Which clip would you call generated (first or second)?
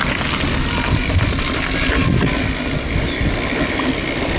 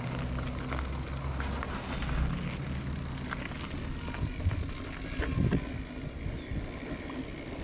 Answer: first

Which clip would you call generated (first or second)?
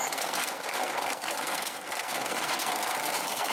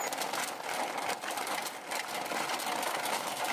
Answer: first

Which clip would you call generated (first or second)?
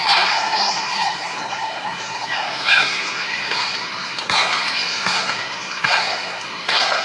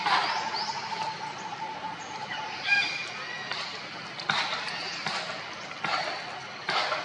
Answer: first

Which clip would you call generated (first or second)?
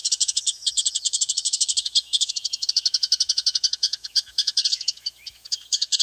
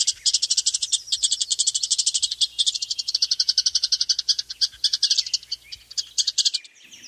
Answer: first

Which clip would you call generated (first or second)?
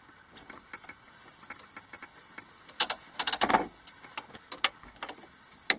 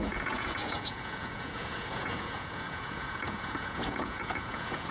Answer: second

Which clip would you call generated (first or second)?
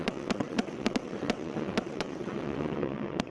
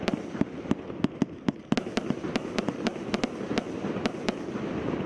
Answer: first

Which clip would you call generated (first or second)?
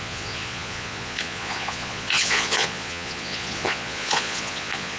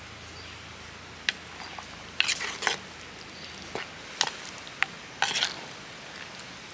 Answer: first